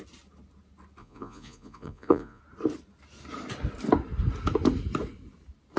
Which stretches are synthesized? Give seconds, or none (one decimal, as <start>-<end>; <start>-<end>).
1.0-2.4